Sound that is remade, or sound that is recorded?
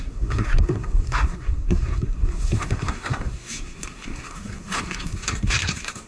remade